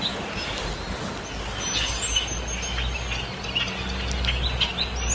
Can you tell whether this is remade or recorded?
recorded